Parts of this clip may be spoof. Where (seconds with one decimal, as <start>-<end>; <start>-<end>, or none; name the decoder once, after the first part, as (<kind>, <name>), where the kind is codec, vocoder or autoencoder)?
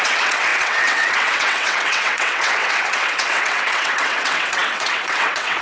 0.0-5.6 (vocoder, WaveNeXt)